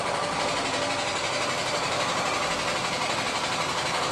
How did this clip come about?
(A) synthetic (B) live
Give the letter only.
A